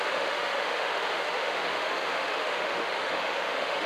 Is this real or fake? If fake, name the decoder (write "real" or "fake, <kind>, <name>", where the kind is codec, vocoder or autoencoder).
fake, autoencoder, DAC-VAE